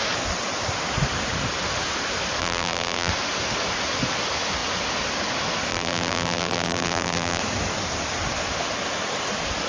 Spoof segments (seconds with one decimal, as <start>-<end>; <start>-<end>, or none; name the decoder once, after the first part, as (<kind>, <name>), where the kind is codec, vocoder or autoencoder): 2.4-3.1 (vocoder, BigVGAN v2); 5.7-7.4